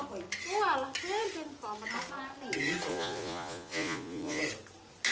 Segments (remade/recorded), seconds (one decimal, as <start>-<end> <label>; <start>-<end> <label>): 0.0-2.9 recorded; 2.9-4.4 remade; 4.4-5.1 recorded